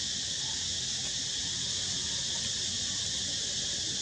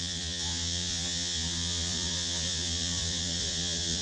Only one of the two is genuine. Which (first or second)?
first